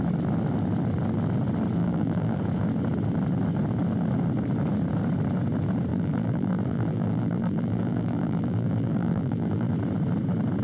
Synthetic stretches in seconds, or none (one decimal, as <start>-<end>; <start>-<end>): 1.8-2.4; 5.9-9.7